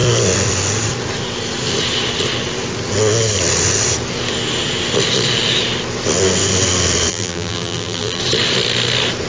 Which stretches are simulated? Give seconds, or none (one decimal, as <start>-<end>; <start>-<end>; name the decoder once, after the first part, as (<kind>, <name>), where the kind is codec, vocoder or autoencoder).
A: 7.1-8.2 (vocoder, BigVGAN v2)